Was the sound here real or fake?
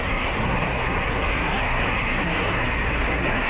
fake